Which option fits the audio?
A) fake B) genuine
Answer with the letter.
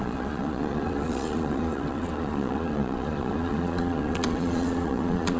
A